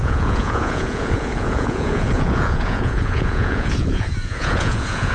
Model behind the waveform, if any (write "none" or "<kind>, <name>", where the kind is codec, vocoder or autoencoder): vocoder, Vocos